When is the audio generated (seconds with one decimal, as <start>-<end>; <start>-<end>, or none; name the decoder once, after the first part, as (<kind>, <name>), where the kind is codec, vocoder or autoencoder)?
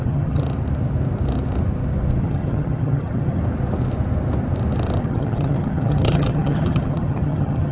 0.0-0.4 (vocoder, HiFi-GAN); 2.2-3.4; 5.0-7.7